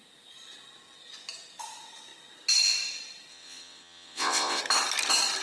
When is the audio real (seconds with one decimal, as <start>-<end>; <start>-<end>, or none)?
0.0-3.3; 4.6-5.4